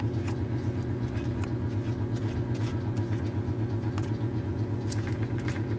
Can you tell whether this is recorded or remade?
remade